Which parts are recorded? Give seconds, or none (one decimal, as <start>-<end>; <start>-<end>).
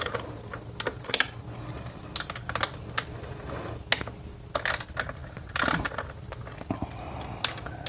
0.0-7.9